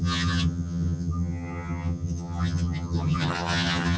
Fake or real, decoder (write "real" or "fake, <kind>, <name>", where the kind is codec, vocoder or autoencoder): fake, vocoder, HiFi-GAN